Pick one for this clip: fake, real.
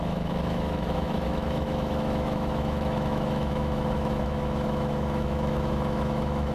fake